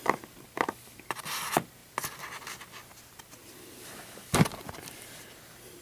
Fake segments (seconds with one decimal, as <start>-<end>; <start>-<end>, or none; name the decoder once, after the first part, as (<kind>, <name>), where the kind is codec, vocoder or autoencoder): none

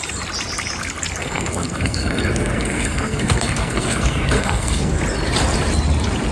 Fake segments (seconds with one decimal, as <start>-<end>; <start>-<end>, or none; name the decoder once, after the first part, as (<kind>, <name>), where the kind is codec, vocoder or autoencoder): 1.2-5.0 (codec, SNAC)

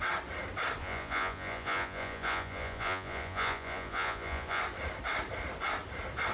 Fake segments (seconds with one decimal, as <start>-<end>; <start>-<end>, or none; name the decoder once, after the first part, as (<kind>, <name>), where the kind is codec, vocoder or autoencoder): 0.8-4.6 (vocoder, Vocos)

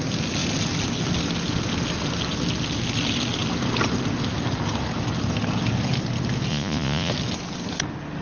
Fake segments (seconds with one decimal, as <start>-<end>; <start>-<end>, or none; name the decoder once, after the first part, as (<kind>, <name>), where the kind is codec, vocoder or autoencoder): 6.5-7.1 (vocoder, Vocos)

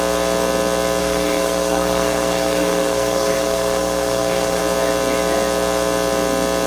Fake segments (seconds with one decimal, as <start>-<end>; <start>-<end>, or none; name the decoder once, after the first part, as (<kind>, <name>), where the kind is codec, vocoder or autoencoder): 1.0-4.6 (codec, SNAC)

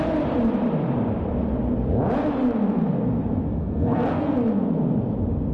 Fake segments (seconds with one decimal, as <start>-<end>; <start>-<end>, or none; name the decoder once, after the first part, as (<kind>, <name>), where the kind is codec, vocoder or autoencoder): 3.5-4.2 (codec, SNAC)

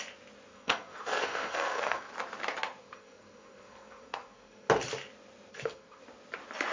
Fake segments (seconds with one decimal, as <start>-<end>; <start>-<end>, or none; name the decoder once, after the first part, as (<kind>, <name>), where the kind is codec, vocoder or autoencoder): 0.5-2.1 (codec, SNAC); 2.8-4.7; 5.5-6.0